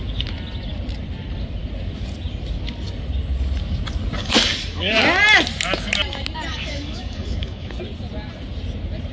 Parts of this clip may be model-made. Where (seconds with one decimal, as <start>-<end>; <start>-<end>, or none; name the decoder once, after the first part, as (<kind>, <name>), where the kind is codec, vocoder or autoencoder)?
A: 4.2-4.9 (codec, DAC); 6.5-7.8